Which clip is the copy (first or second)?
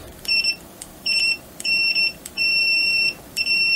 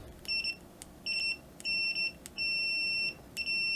first